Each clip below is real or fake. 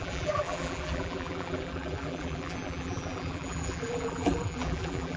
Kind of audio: fake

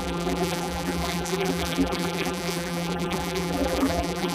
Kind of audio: fake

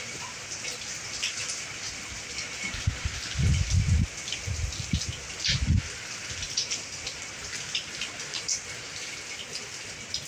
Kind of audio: real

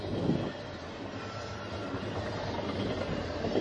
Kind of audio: real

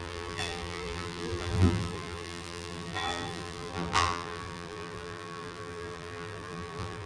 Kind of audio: fake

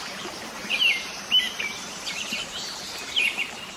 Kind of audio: fake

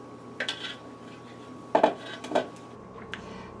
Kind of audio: real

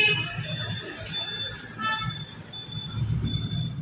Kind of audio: real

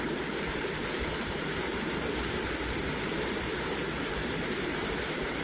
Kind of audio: fake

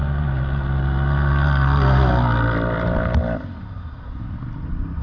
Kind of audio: real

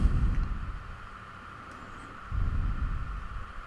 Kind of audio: fake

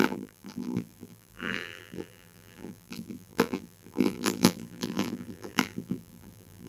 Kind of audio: fake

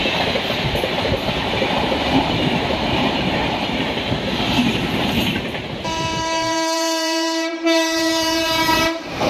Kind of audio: fake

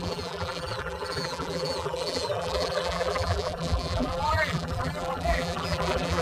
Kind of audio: fake